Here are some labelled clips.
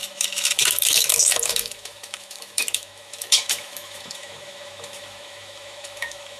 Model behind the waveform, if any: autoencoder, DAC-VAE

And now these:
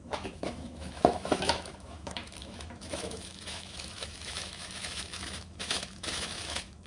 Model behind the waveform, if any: autoencoder, DAC-VAE